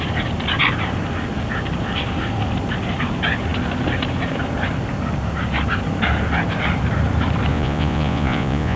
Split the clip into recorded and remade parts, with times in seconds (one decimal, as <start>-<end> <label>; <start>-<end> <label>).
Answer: 0.0-7.5 recorded; 7.5-8.8 remade